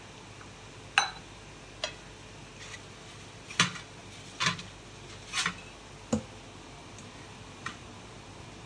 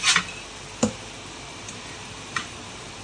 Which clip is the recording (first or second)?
first